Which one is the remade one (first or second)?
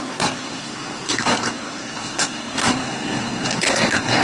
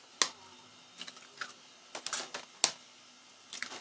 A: first